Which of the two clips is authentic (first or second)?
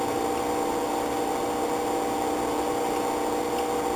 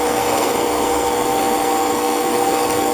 first